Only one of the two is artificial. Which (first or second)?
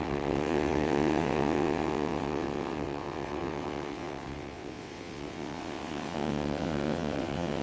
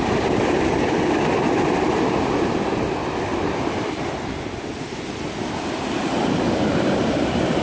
first